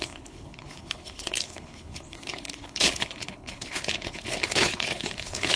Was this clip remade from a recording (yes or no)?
yes